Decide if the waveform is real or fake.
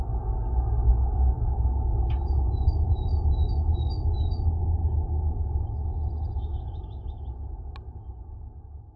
real